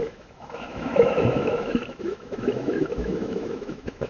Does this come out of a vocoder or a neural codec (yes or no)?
yes